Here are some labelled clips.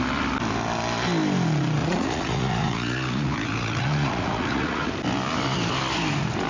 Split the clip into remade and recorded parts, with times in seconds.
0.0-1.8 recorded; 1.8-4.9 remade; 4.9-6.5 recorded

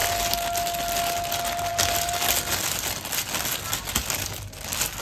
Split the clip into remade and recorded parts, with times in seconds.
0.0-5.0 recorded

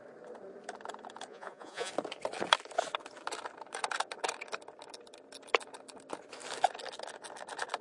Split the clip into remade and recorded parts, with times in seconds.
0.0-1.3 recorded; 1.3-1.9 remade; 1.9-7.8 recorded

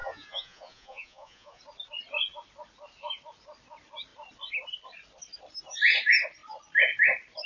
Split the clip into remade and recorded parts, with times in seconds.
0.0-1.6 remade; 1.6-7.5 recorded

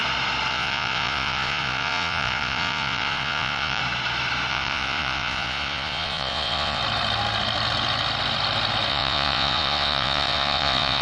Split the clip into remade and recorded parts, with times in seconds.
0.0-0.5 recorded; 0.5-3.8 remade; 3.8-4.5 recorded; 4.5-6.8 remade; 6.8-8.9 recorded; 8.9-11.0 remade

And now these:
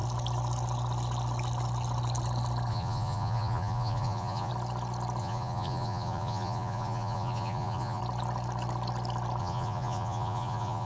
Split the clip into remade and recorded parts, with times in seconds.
0.0-2.7 recorded; 2.7-4.5 remade; 4.5-5.2 recorded; 5.2-8.0 remade; 8.0-9.4 recorded; 9.4-10.9 remade

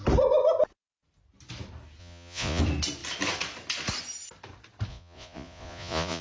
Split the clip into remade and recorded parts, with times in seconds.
0.0-2.0 recorded; 2.0-2.6 remade; 2.6-4.9 recorded; 4.9-6.2 remade

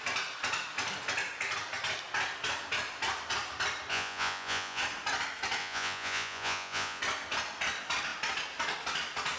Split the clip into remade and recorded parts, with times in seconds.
0.0-3.9 recorded; 3.9-4.8 remade; 4.8-5.6 recorded; 5.6-7.0 remade; 7.0-9.4 recorded